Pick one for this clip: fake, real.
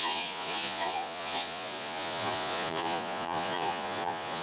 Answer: fake